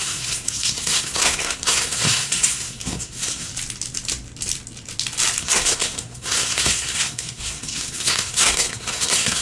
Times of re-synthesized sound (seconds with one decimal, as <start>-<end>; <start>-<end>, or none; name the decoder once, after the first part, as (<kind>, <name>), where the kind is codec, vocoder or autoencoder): 0.0-3.5 (codec, SNAC); 5.4-9.4